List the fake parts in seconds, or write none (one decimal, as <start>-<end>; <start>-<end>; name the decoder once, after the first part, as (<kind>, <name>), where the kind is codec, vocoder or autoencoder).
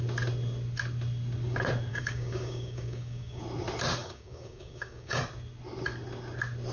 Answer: 1.9-3.4 (codec, DAC); 4.0-5.2